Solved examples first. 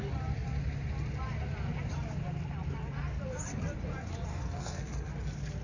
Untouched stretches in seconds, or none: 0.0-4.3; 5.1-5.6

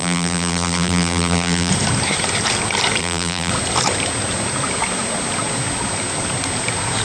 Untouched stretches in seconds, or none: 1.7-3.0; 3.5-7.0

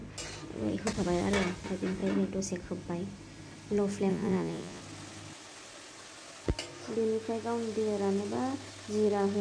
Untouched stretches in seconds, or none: 0.0-4.1; 4.8-9.4